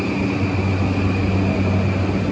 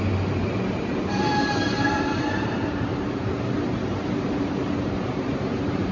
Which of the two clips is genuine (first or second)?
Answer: first